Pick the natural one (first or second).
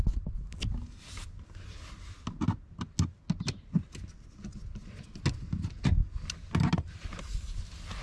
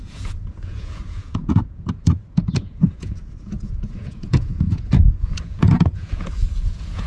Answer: first